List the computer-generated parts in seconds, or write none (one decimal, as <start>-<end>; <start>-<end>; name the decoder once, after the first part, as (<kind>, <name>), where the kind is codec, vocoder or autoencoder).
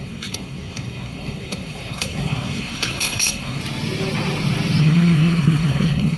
0.0-3.6 (codec, SNAC); 4.8-6.2